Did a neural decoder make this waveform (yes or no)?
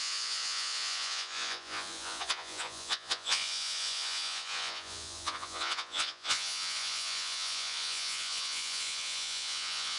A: yes